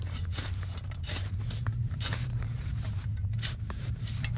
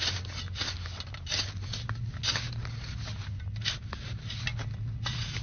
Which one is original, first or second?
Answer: second